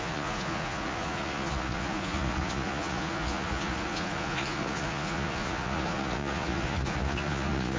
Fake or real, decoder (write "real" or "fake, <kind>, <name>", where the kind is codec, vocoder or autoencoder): fake, vocoder, Vocos